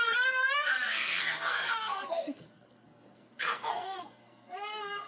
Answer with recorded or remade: remade